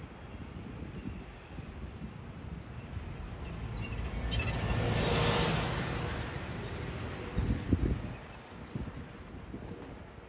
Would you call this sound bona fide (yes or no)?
yes